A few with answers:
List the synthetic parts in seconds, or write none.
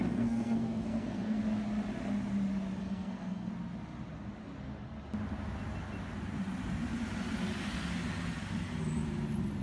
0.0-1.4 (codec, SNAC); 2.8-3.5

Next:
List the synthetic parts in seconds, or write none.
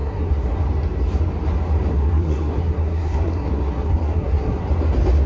0.0-0.6 (codec, SNAC); 1.9-4.6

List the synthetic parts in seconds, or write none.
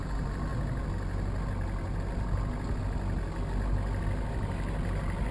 none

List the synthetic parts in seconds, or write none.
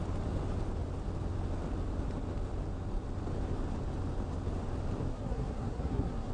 5.1-6.3 (codec, SNAC)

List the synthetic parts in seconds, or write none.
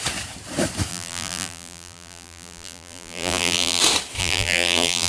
0.9-3.8 (vocoder, BigVGAN v2); 4.2-5.1